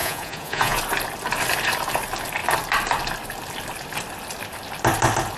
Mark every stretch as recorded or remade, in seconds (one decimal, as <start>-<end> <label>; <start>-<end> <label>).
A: 0.0-0.8 remade; 0.8-5.4 recorded